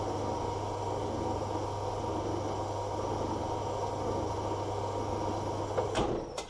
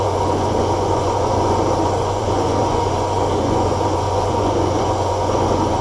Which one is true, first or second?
first